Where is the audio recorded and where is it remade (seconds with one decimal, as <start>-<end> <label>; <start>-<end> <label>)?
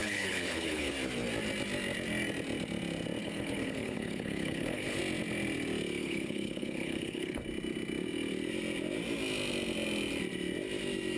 0.0-0.9 remade; 0.9-3.2 recorded; 3.2-5.0 remade; 5.0-6.0 recorded; 6.0-7.4 remade; 7.4-11.2 recorded